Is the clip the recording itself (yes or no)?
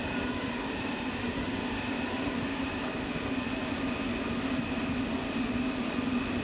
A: yes